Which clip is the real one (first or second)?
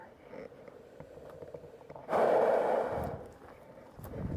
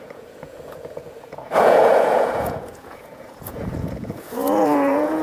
first